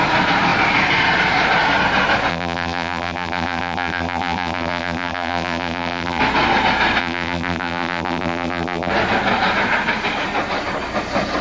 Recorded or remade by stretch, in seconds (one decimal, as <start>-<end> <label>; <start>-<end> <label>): 0.0-2.3 recorded; 2.3-6.2 remade; 6.2-7.0 recorded; 7.0-8.9 remade; 8.9-11.4 recorded